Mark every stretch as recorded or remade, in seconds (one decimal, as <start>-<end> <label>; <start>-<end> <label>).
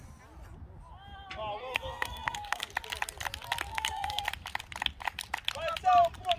0.0-1.6 recorded; 1.6-2.7 remade; 2.7-3.7 recorded; 3.7-4.2 remade; 4.2-6.4 recorded